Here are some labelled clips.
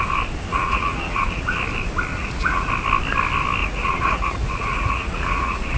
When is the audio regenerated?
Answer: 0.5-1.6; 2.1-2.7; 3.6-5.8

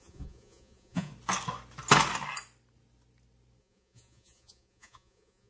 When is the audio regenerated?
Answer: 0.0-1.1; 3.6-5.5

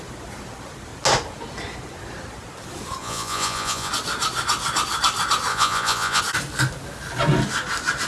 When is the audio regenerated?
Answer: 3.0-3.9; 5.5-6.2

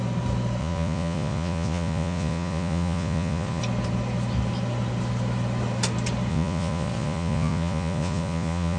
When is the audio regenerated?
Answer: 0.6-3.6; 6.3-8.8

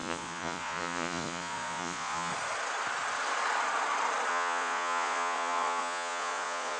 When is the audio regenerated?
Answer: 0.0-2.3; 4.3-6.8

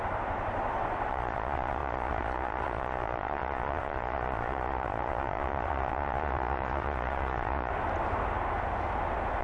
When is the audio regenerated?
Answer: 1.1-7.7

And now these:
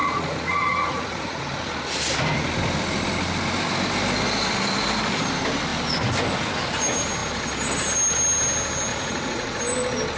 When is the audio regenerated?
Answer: 0.0-1.4; 8.9-9.6

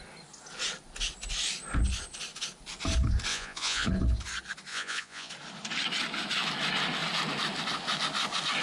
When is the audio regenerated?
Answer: 3.3-3.9; 4.7-5.3